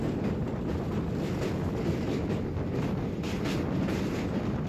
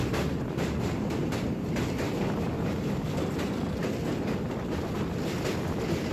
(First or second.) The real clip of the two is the first